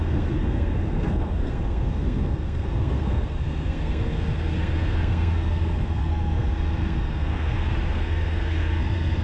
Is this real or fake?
fake